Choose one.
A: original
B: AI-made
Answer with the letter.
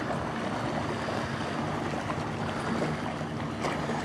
A